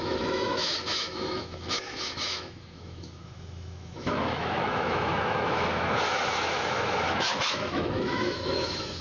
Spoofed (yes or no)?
yes